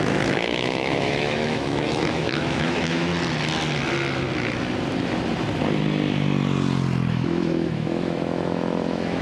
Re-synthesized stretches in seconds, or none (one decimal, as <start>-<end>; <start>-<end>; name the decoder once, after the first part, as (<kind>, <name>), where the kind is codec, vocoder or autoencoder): 0.0-3.1 (autoencoder, DAC-VAE); 7.1-9.2

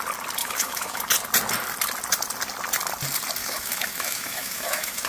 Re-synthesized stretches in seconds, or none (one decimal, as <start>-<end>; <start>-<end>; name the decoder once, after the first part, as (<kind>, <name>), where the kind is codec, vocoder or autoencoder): 0.4-1.0 (autoencoder, DAC-VAE); 3.4-5.1

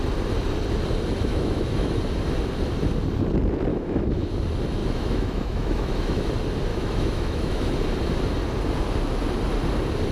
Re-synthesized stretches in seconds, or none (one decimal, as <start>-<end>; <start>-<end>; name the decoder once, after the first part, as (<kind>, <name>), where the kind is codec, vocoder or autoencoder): 1.3-2.0 (autoencoder, DAC-VAE); 3.7-4.3; 4.8-6.3; 6.7-7.7

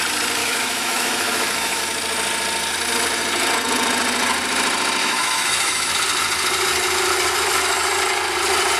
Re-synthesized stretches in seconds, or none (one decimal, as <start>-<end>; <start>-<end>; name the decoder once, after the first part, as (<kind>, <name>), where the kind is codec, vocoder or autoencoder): 0.4-1.8 (autoencoder, DAC-VAE); 5.0-5.9

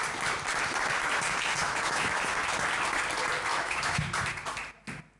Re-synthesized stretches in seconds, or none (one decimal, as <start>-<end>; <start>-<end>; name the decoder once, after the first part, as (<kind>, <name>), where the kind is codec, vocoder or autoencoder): 1.6-2.2 (autoencoder, DAC-VAE); 3.5-4.0